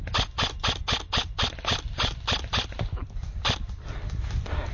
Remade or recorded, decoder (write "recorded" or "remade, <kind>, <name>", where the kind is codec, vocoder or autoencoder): recorded